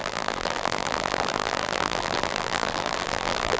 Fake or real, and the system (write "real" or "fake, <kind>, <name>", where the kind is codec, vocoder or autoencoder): fake, vocoder, BigVGAN v2